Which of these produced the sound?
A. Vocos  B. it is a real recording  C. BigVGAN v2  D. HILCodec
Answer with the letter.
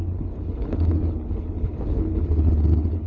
D